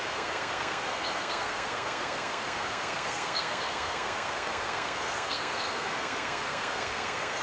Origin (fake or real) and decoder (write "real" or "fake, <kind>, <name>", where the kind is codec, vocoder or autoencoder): fake, codec, SNAC